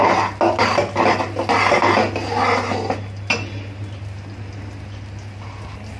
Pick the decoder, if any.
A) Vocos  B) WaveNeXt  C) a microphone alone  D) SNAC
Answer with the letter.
C